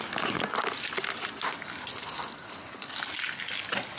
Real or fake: real